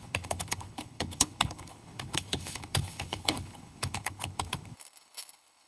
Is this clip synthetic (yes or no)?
yes